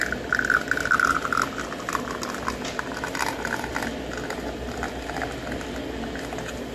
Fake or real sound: real